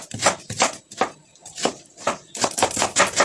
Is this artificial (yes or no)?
no